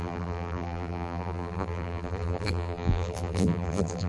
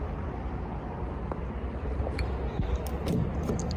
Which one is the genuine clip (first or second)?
second